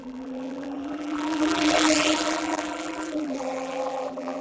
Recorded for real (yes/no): no